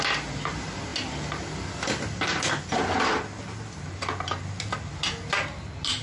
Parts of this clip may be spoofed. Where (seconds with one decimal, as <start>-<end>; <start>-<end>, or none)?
none